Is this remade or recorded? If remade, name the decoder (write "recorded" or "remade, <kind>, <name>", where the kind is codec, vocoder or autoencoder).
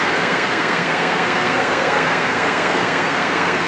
remade, codec, SNAC